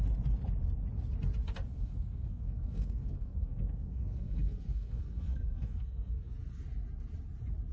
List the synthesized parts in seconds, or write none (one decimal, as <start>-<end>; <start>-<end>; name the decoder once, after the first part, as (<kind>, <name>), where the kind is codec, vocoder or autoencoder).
1.7-6.3 (codec, SNAC)